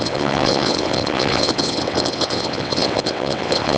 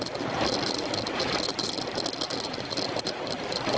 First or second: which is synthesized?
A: first